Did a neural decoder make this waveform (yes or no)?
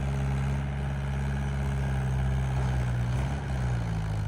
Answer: no